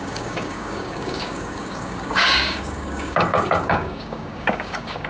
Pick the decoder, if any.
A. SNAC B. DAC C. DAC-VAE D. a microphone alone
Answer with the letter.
B